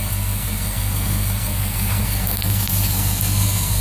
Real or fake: fake